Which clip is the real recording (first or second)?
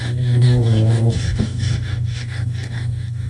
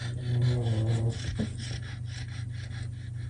second